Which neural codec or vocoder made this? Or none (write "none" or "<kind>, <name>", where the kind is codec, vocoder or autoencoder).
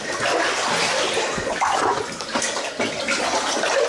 none